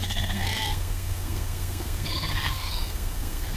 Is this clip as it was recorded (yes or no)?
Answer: no